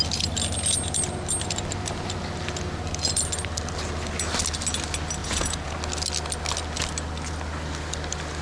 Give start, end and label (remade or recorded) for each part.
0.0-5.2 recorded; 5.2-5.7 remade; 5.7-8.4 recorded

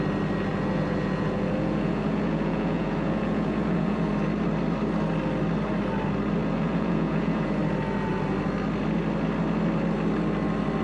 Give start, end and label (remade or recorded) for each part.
0.0-0.5 recorded; 0.5-4.1 remade; 4.1-6.4 recorded; 6.4-7.6 remade; 7.6-10.8 recorded